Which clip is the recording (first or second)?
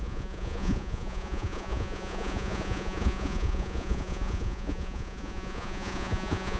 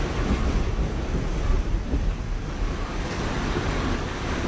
second